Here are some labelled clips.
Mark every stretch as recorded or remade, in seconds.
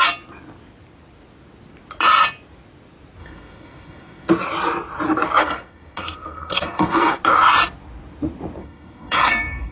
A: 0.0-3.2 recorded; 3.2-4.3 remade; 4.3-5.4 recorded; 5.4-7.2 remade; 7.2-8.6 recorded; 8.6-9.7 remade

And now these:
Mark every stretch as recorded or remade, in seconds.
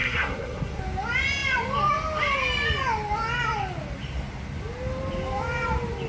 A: 0.0-0.8 remade; 0.8-6.1 recorded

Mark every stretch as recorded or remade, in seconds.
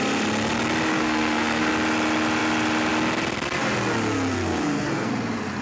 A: 0.0-0.9 recorded; 0.9-1.7 remade; 1.7-4.3 recorded; 4.3-5.1 remade; 5.1-5.6 recorded